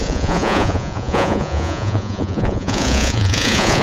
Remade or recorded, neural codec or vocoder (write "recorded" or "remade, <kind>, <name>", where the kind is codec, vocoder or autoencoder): remade, vocoder, Vocos